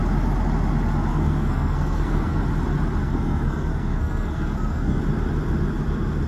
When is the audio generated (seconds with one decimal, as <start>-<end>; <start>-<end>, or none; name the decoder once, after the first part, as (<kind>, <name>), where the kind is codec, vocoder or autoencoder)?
1.1-2.4 (codec, SNAC); 3.0-5.0